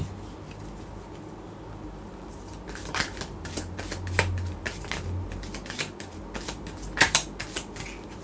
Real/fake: real